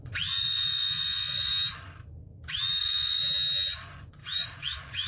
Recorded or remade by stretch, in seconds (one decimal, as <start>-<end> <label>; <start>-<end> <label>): 0.0-1.5 remade; 1.5-2.8 recorded; 2.8-3.2 remade; 3.2-3.8 recorded; 3.8-5.1 remade